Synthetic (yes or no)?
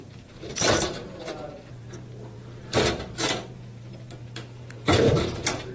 yes